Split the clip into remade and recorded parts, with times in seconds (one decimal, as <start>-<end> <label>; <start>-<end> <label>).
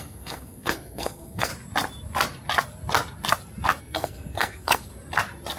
0.0-1.5 remade; 1.5-3.8 recorded; 3.8-4.9 remade; 4.9-5.6 recorded